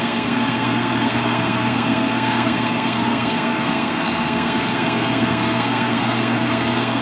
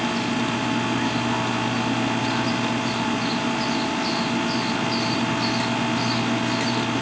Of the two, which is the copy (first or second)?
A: first